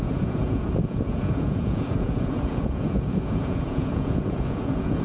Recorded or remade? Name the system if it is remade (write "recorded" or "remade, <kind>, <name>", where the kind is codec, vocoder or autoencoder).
remade, vocoder, Vocos